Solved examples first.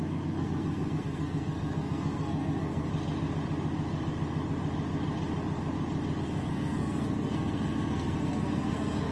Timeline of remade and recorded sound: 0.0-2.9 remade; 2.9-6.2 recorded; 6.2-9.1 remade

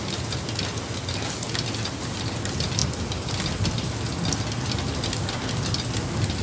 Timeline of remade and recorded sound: 0.0-6.4 recorded

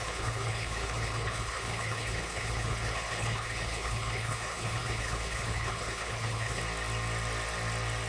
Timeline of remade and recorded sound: 0.0-6.6 remade; 6.6-8.1 recorded

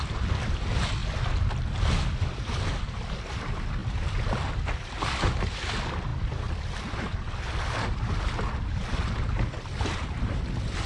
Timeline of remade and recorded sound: 0.0-10.9 recorded

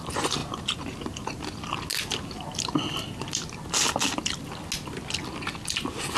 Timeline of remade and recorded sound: 0.0-6.2 recorded

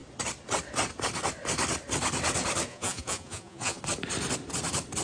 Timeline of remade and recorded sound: 0.0-2.7 recorded; 2.7-3.8 remade; 3.8-5.0 recorded